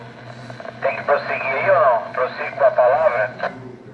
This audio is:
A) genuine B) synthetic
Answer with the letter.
A